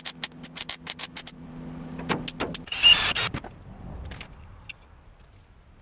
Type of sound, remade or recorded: recorded